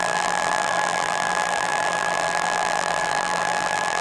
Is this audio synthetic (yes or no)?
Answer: yes